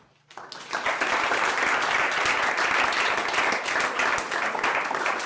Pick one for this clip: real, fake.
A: real